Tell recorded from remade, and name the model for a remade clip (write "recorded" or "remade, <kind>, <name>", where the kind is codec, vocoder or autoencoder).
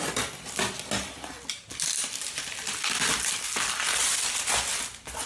recorded